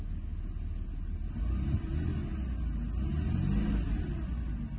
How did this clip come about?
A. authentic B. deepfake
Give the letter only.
A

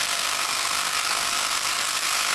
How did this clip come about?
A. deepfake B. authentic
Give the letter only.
A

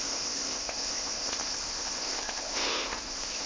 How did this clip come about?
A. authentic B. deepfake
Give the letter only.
B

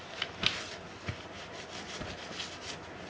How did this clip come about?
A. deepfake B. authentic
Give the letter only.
B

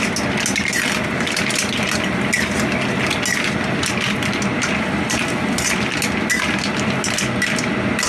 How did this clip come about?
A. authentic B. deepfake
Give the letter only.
A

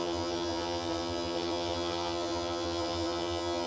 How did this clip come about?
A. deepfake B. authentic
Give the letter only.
A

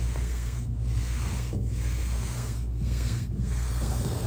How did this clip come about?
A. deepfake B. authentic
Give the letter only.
A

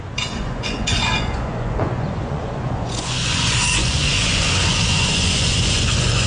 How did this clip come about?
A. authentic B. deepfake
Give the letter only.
B